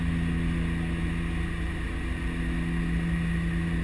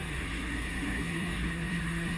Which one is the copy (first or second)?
second